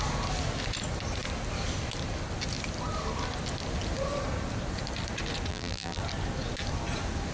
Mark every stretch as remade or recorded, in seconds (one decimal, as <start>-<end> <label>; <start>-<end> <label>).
0.0-5.5 recorded; 5.5-6.0 remade; 6.0-7.3 recorded